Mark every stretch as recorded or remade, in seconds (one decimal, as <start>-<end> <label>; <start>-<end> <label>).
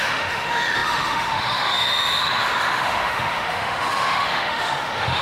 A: 0.0-5.2 remade